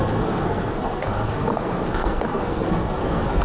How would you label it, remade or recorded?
remade